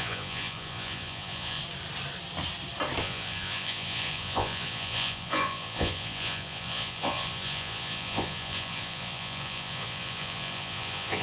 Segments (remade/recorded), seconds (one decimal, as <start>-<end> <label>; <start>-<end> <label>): 0.0-1.6 remade; 1.6-3.0 recorded; 3.0-11.2 remade